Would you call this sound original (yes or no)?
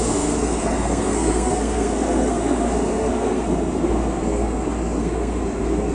no